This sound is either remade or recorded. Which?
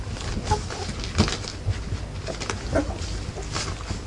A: recorded